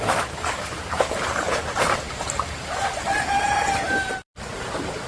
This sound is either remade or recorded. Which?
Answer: remade